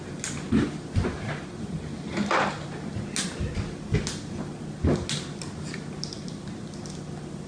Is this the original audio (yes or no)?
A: yes